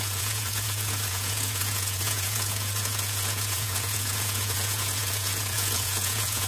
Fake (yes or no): yes